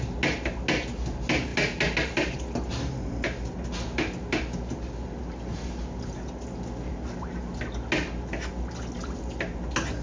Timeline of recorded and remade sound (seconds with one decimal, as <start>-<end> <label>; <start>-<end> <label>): 0.0-10.0 recorded